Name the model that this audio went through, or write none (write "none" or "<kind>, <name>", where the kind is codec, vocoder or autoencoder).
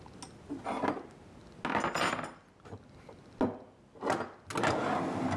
none